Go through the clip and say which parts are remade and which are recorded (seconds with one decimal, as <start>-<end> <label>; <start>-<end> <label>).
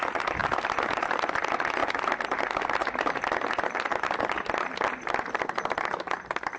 0.0-6.6 recorded